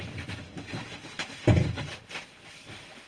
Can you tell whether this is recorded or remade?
recorded